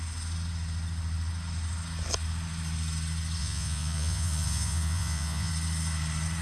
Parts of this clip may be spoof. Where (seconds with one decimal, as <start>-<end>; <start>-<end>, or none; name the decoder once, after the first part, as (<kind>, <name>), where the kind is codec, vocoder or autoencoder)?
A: 3.4-5.5 (vocoder, Vocos)